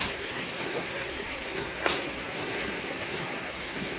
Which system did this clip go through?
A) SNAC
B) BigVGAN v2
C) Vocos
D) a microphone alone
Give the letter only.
A